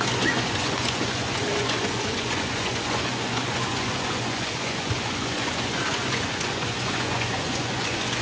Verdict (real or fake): fake